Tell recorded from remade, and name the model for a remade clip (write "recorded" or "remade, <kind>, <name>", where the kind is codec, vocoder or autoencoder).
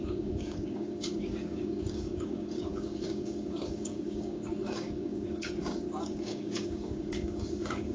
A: remade, codec, DAC